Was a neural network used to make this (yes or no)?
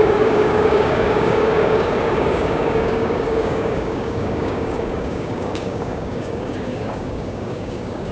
yes